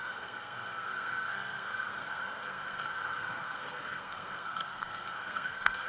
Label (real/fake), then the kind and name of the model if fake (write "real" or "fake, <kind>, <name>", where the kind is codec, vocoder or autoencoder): fake, codec, SNAC